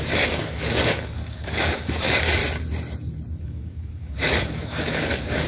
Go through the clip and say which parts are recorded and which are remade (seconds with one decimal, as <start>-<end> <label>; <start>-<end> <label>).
0.0-2.4 remade; 2.4-3.4 recorded; 3.4-5.5 remade